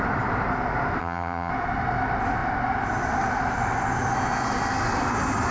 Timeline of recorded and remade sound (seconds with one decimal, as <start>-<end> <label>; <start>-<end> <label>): 0.0-1.0 recorded; 1.0-1.5 remade; 1.5-5.5 recorded